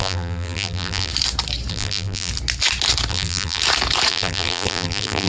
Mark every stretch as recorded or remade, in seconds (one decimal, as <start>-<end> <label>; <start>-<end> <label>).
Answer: 0.0-1.1 remade; 1.1-1.7 recorded; 1.7-2.3 remade; 2.3-3.1 recorded; 3.1-3.6 remade; 3.6-4.1 recorded; 4.1-5.3 remade